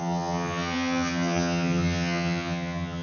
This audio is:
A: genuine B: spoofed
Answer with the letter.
B